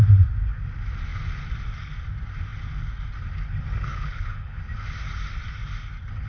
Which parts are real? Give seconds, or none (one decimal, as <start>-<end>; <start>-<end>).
0.0-3.9; 4.6-6.3